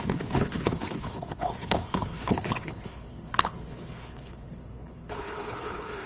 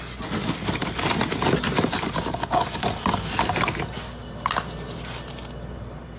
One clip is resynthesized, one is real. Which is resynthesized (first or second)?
first